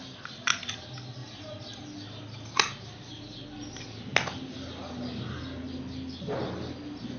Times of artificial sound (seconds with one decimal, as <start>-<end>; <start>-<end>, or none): 1.2-1.8